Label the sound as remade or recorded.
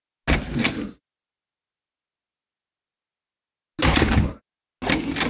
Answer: recorded